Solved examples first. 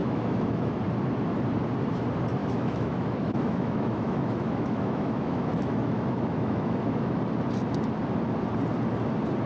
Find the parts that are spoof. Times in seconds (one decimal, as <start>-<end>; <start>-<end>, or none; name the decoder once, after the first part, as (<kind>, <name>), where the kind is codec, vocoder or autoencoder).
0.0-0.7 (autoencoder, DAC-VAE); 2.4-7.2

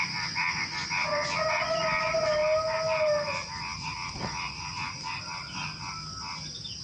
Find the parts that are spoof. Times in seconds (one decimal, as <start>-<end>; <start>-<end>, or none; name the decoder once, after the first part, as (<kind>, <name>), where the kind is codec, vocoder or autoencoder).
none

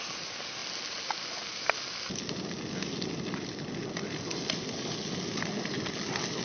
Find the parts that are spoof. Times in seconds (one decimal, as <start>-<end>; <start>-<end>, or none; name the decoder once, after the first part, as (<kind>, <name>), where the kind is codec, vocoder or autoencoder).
none

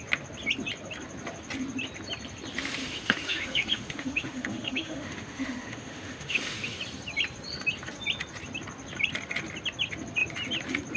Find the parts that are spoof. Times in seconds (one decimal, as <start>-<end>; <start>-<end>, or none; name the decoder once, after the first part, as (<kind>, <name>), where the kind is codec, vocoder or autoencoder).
2.8-6.8 (autoencoder, DAC-VAE)